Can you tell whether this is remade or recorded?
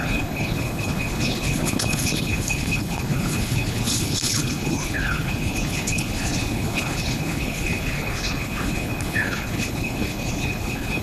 remade